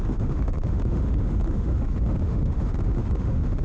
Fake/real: fake